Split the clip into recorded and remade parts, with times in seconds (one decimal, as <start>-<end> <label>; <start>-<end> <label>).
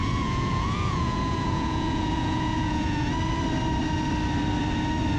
0.0-3.1 remade; 3.1-5.2 recorded